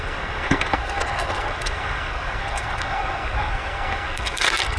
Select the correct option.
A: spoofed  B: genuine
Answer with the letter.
A